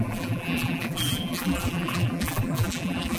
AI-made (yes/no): yes